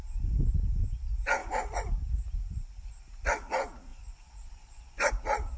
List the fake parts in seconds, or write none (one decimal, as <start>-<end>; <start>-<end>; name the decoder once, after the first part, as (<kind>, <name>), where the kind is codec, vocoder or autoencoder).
1.4-1.9 (vocoder, Vocos); 3.9-5.1